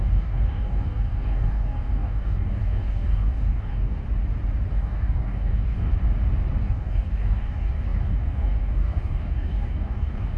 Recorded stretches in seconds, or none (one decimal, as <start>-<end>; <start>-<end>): 4.0-4.7; 5.9-6.6